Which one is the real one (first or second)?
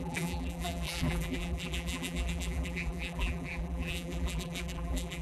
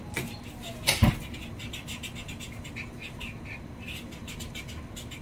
second